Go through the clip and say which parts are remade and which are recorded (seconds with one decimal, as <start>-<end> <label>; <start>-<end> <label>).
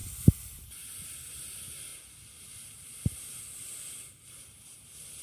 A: 0.0-1.9 remade; 1.9-2.4 recorded; 2.4-2.9 remade; 2.9-3.6 recorded; 3.6-5.2 remade